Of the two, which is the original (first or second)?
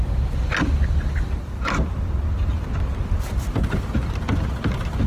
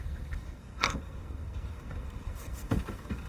first